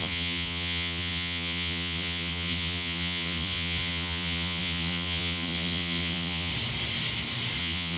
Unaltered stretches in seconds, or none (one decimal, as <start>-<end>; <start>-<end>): 6.5-7.6